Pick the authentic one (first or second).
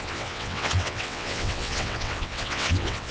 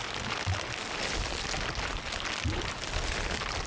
second